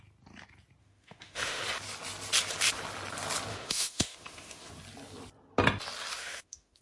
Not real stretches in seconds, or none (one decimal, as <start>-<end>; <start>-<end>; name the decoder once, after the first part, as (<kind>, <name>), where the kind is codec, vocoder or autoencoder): 0.8-1.6 (autoencoder, DAC-VAE); 3.5-4.7; 6.1-6.8

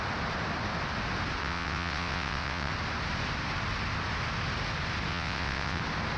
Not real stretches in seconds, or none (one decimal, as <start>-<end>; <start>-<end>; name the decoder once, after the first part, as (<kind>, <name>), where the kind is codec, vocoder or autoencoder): 1.4-2.7 (vocoder, WaveNeXt); 5.1-5.8

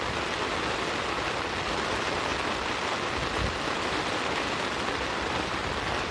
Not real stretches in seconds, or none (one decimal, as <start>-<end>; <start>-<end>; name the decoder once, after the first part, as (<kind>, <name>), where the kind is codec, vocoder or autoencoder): none

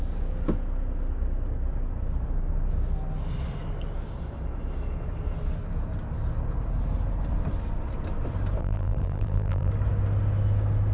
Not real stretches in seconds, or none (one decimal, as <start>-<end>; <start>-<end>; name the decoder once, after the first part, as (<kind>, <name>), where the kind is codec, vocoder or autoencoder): 8.6-9.7 (vocoder, BigVGAN v2)

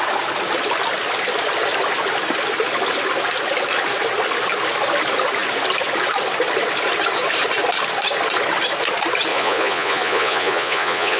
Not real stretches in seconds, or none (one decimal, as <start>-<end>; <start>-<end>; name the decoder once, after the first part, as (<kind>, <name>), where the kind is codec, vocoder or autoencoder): 9.3-11.2 (vocoder, Vocos)